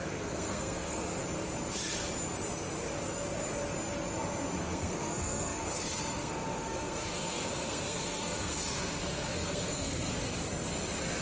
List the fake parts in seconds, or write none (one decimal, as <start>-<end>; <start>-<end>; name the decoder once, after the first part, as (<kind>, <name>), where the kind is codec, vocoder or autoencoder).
0.0-1.2 (codec, SNAC); 4.6-10.1